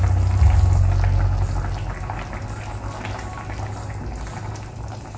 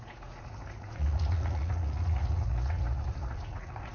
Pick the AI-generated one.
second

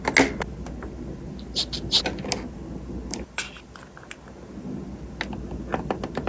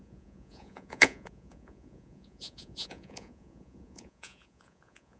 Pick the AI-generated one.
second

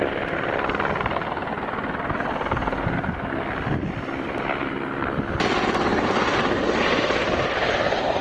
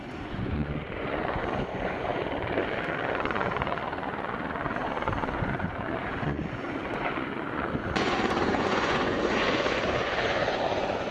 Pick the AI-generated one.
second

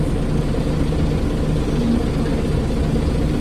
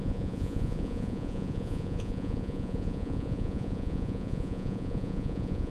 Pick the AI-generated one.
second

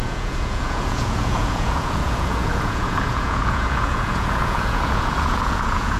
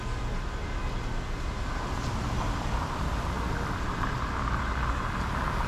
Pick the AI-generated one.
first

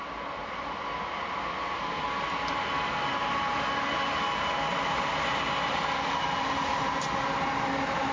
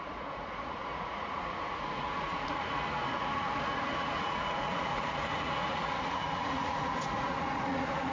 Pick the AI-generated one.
second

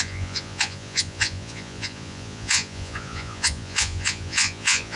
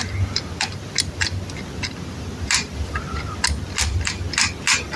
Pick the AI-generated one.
first